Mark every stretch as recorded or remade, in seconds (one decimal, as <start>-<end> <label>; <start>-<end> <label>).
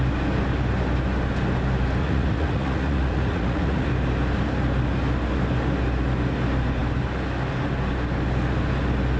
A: 0.0-2.0 recorded; 2.0-3.9 remade; 3.9-9.2 recorded